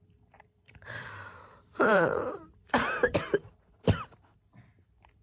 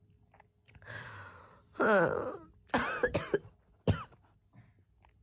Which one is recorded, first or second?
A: second